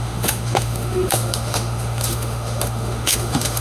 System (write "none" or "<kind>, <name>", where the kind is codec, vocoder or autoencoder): autoencoder, DAC-VAE